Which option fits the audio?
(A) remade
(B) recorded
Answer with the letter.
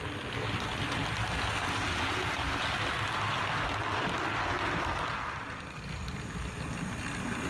B